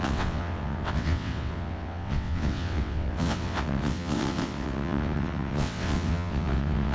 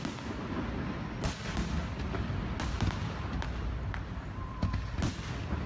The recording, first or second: second